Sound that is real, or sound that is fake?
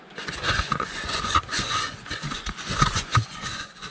fake